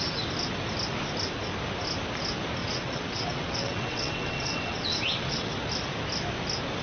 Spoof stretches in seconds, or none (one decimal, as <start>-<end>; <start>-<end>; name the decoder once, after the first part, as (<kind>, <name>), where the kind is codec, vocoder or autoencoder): 2.6-5.5 (vocoder, WaveNeXt)